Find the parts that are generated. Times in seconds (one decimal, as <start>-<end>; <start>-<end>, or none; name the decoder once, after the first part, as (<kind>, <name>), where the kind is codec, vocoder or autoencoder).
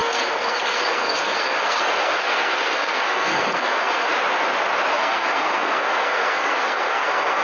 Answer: 0.0-4.1 (codec, SNAC); 4.9-7.4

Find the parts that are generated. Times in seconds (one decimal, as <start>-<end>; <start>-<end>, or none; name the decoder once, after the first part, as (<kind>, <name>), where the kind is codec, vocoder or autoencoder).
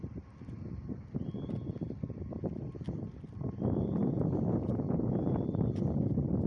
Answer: 4.0-5.4 (vocoder, Vocos)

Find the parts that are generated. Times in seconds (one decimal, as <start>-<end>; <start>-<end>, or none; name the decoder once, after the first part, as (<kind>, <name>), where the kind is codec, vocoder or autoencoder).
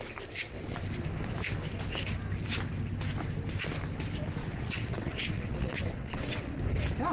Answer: 4.4-6.6 (vocoder, WaveNeXt)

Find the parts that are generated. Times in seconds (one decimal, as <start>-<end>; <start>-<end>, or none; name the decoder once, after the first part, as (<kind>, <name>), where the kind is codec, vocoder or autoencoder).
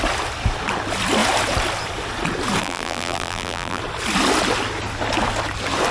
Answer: 2.6-3.8 (vocoder, BigVGAN v2)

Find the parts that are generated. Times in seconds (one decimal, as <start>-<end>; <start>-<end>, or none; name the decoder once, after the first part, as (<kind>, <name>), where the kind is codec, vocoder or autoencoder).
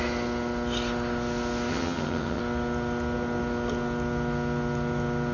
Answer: 1.7-2.4 (vocoder, HiFi-GAN)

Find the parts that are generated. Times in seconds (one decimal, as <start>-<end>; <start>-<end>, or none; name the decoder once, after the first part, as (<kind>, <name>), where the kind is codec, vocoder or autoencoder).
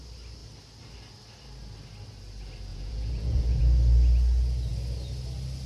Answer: 2.7-3.6 (vocoder, Vocos)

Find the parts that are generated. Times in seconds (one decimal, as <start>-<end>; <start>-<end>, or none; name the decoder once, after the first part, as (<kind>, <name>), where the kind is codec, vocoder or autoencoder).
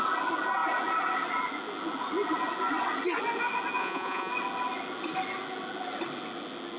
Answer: 3.8-4.3 (vocoder, Vocos)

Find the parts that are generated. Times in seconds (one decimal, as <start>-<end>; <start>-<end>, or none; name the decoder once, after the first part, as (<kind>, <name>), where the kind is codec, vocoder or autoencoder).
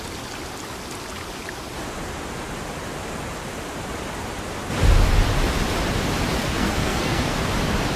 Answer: 6.4-7.4 (codec, SNAC)